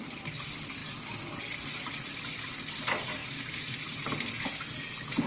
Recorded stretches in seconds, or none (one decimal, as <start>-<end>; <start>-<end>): 0.0-5.3